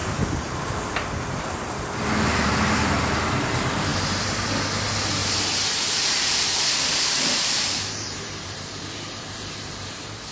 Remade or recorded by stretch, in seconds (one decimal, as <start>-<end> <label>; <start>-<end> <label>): 0.0-0.5 remade; 0.5-3.9 recorded; 3.9-4.5 remade; 4.5-5.2 recorded; 5.2-9.9 remade; 9.9-10.3 recorded